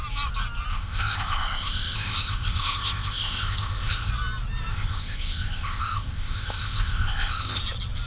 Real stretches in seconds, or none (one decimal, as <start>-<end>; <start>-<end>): 0.0-0.7; 4.1-4.7; 7.6-8.1

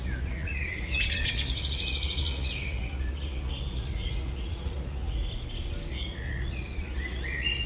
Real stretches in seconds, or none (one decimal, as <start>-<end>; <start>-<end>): 5.3-5.9

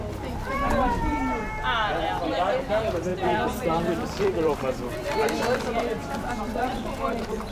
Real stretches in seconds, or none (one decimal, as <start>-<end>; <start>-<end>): 0.0-3.1

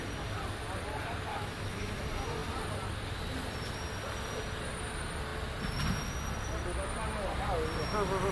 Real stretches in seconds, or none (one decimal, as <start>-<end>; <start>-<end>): 0.0-1.3; 2.0-8.3

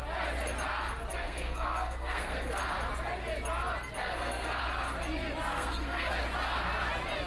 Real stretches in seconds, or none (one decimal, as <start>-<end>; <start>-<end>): 0.0-1.1; 2.6-4.0; 4.6-5.5; 6.1-7.3